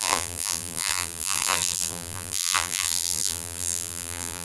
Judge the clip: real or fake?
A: fake